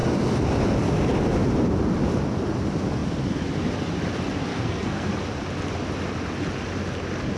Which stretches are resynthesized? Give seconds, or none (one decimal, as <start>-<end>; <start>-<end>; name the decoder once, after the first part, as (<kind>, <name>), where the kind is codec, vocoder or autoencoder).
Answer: 4.5-5.1 (codec, SNAC)